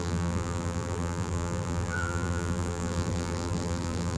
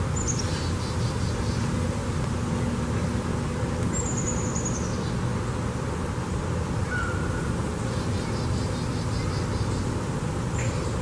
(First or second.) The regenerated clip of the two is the first